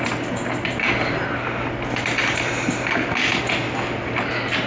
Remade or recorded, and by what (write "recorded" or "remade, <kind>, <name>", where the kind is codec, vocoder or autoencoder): recorded